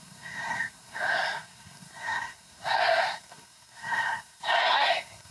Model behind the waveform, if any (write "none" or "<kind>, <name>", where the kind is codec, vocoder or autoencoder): codec, SNAC